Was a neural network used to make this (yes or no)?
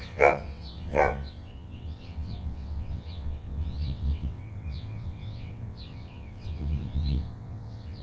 yes